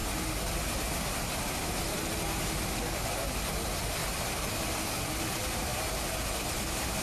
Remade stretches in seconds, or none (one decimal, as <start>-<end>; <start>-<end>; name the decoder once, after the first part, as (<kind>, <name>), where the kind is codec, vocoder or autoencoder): none